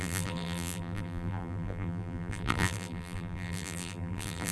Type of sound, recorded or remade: remade